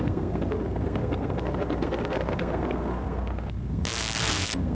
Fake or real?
fake